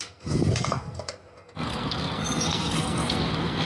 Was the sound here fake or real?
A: fake